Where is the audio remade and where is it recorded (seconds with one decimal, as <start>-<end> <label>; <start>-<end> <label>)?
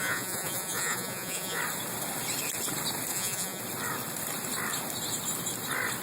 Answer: 0.0-1.6 remade; 1.6-3.1 recorded; 3.1-3.6 remade; 3.6-6.0 recorded